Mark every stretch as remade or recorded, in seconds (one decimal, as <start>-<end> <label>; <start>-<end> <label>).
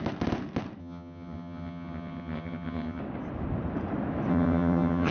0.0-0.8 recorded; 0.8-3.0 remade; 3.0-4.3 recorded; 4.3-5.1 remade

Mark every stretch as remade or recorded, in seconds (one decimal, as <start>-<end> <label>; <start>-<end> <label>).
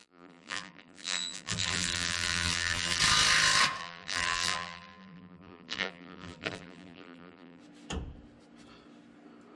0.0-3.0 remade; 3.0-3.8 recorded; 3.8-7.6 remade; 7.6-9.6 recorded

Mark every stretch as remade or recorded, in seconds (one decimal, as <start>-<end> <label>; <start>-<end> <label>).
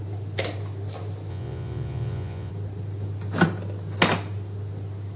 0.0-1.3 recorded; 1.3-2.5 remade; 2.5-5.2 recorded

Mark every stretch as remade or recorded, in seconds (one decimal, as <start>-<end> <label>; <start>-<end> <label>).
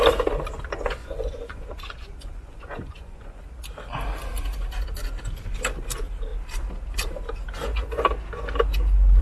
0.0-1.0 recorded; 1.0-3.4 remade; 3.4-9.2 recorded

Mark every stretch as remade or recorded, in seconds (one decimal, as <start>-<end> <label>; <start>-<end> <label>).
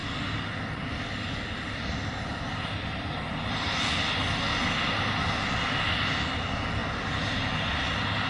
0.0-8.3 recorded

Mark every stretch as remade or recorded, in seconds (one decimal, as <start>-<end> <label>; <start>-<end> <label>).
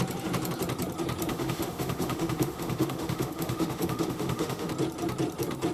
0.0-1.3 recorded; 1.3-4.7 remade; 4.7-5.7 recorded